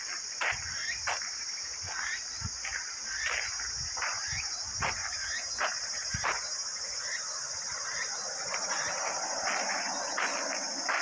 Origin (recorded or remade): recorded